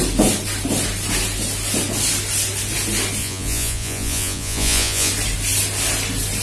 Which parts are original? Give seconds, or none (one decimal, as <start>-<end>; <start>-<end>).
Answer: 0.0-3.2; 5.1-6.4